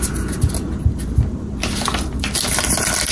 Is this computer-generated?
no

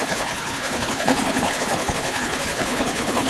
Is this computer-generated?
yes